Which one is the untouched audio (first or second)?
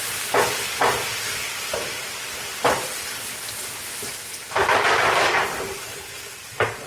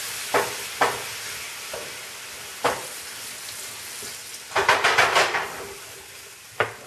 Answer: second